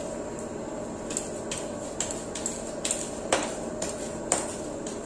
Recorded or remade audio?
recorded